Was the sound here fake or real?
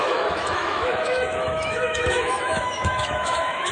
fake